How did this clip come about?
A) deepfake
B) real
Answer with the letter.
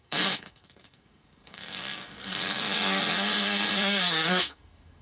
A